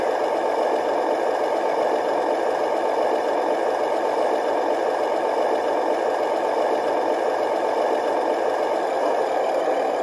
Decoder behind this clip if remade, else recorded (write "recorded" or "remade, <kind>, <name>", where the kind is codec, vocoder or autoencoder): recorded